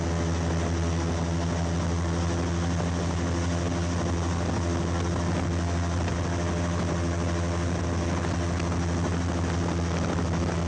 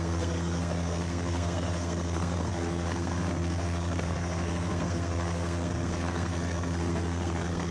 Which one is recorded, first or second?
first